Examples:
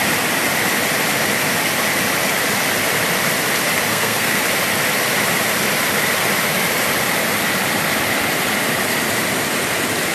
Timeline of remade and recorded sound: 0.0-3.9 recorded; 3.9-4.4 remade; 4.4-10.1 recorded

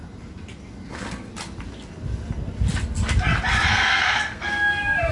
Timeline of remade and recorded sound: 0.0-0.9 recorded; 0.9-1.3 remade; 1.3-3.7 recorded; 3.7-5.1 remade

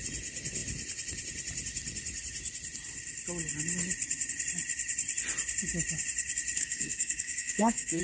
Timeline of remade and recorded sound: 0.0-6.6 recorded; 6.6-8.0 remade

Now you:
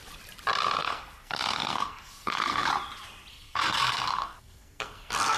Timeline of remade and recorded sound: 0.0-0.8 recorded; 0.8-2.7 remade; 2.7-3.3 recorded; 3.3-5.4 remade

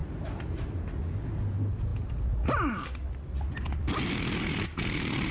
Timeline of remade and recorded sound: 0.0-5.3 recorded

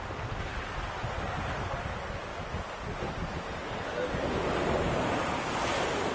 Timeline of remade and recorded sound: 0.0-6.1 recorded

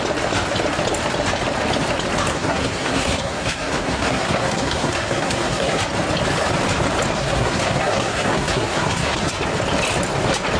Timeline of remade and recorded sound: 0.0-2.3 recorded; 2.3-5.8 remade; 5.8-7.1 recorded; 7.1-9.3 remade; 9.3-10.6 recorded

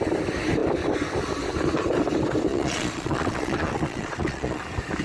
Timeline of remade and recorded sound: 0.0-2.5 recorded; 2.5-4.6 remade; 4.6-5.0 recorded